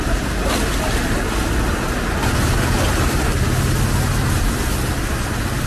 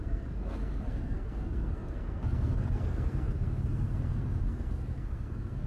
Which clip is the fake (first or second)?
second